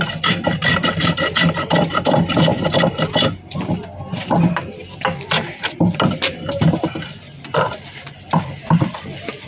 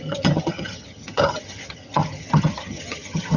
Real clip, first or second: first